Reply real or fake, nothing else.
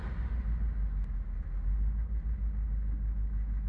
real